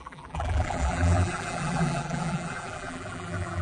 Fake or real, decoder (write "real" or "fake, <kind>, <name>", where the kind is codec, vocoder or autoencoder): fake, vocoder, BigVGAN v2